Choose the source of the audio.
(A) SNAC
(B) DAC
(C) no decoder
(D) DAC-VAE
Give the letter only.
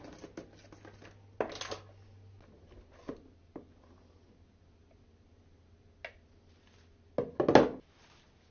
C